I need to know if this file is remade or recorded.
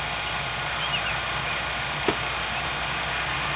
recorded